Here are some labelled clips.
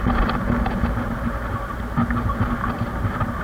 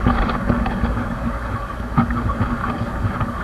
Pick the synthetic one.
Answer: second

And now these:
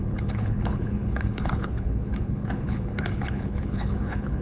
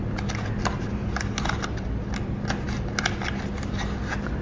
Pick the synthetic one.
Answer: first